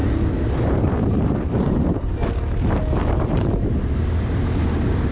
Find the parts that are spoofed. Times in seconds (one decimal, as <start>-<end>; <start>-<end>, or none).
0.0-2.3; 3.0-5.1